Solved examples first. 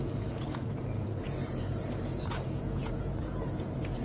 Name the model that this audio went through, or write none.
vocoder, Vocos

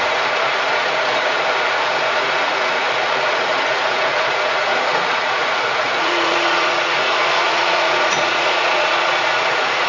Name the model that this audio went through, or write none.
vocoder, Vocos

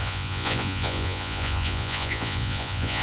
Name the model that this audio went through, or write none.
vocoder, Vocos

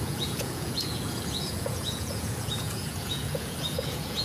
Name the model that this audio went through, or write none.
vocoder, Vocos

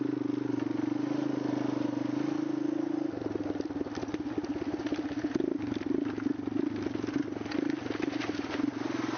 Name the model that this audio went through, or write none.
none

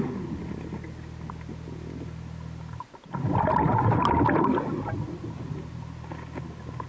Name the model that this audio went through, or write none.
none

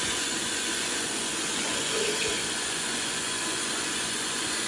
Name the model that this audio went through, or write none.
vocoder, Vocos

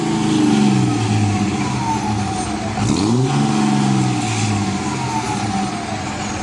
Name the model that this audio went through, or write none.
none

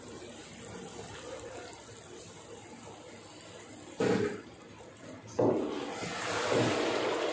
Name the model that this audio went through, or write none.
none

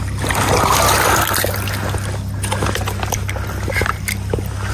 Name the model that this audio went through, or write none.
none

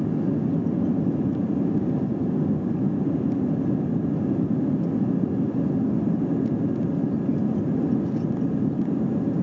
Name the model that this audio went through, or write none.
none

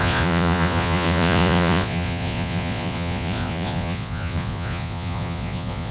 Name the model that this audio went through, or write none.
vocoder, Vocos